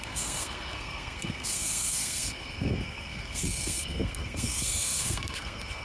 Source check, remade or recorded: remade